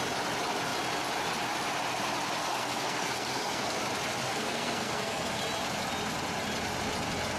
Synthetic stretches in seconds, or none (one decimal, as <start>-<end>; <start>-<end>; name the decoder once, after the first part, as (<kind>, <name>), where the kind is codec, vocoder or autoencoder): 2.4-3.8 (codec, SNAC); 4.3-5.4